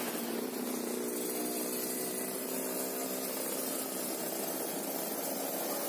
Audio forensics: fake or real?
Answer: real